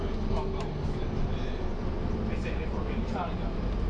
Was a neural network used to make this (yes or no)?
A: no